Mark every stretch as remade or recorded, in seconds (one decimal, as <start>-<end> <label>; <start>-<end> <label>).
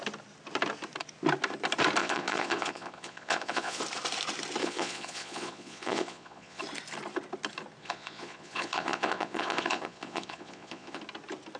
0.0-2.0 recorded; 2.0-3.8 remade; 3.8-4.6 recorded; 4.6-6.6 remade; 6.6-7.8 recorded; 7.8-11.0 remade; 11.0-11.6 recorded